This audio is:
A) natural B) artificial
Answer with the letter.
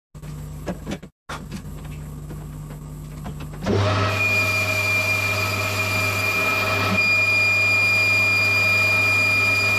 A